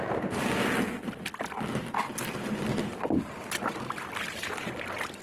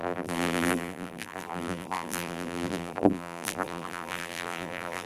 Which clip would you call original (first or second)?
first